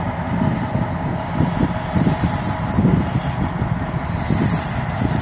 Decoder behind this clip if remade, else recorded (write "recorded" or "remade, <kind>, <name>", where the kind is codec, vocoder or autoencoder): remade, vocoder, BigVGAN v2